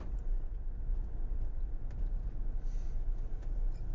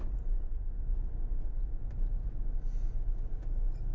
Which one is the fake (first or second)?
first